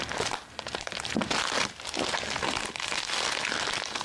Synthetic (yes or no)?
yes